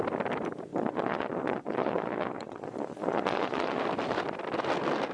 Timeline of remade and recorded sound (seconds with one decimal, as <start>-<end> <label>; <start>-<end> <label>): 0.0-0.7 recorded; 0.7-3.8 remade; 3.8-5.1 recorded

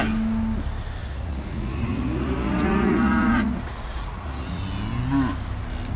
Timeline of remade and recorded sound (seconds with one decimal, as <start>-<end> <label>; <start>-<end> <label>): 0.0-1.0 recorded; 1.0-4.6 remade; 4.6-6.0 recorded

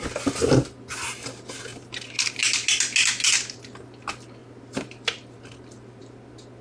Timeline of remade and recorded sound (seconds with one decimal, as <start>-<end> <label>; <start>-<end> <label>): 0.0-6.6 recorded

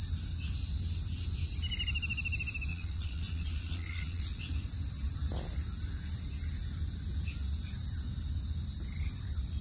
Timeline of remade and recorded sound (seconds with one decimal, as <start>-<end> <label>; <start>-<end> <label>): 0.0-2.7 recorded; 2.7-4.4 remade; 4.4-9.6 recorded

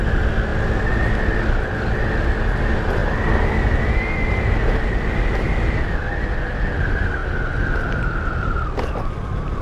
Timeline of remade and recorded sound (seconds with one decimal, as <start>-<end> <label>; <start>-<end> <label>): 0.0-9.6 recorded

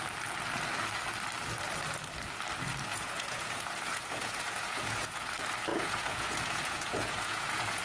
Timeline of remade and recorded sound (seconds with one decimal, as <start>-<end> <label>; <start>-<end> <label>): 0.0-2.9 recorded; 2.9-5.3 remade; 5.3-5.7 recorded; 5.7-7.8 remade